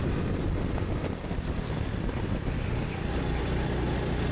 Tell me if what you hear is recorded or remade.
recorded